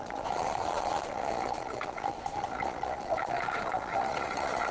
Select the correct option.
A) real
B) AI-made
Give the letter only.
B